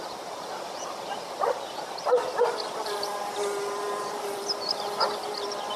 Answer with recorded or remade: remade